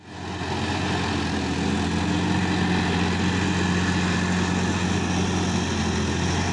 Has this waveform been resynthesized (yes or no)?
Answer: no